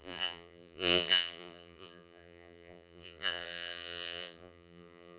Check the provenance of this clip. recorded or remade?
remade